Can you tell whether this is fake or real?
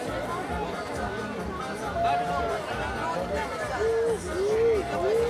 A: real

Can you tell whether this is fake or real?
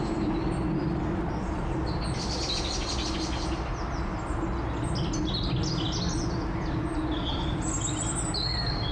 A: real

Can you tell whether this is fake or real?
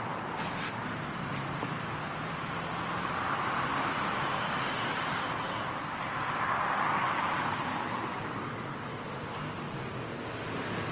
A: real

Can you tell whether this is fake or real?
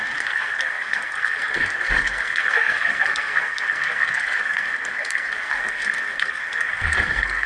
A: fake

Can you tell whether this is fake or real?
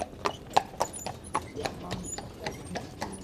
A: real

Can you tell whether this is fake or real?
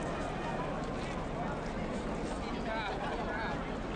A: real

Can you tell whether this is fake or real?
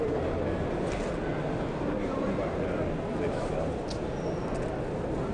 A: real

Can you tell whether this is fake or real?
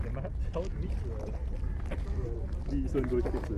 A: real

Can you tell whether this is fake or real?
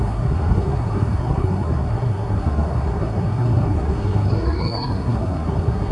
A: fake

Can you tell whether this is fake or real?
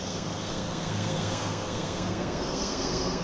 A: fake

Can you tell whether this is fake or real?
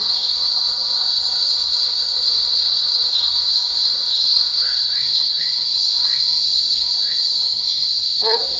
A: fake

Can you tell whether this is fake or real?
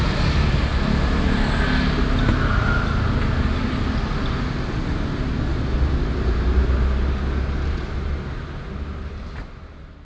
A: real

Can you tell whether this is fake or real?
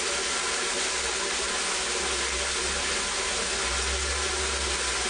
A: real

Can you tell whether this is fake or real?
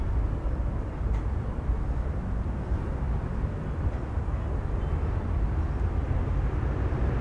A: real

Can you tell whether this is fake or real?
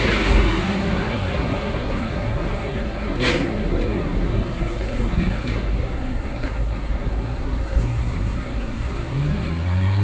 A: fake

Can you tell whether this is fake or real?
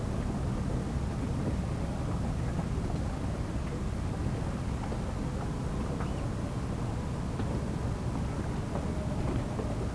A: real